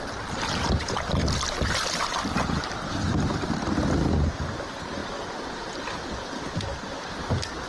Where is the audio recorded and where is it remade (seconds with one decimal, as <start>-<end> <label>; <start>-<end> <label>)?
0.0-7.7 recorded

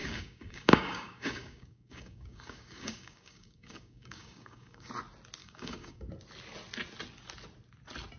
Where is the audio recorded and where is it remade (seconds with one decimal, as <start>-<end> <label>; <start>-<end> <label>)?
0.0-4.9 remade; 4.9-5.4 recorded; 5.4-6.1 remade; 6.1-8.2 recorded

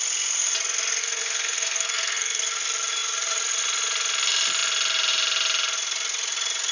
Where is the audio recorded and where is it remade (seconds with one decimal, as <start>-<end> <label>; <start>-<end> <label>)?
0.0-1.0 recorded; 1.0-2.4 remade; 2.4-6.7 recorded

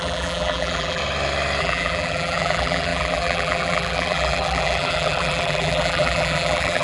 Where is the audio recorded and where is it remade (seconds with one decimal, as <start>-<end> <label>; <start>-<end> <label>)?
0.0-1.0 remade; 1.0-1.6 recorded; 1.6-6.8 remade

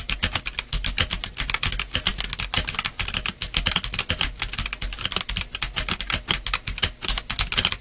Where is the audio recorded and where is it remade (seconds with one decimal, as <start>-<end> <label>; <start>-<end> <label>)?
0.0-7.8 recorded